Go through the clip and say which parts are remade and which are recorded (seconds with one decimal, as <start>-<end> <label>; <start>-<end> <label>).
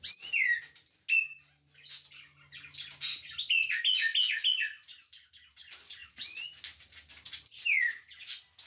0.0-8.7 recorded